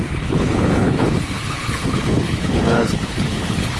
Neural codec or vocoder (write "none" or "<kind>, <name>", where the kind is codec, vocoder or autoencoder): codec, HILCodec